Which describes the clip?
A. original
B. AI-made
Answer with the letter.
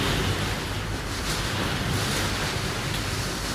A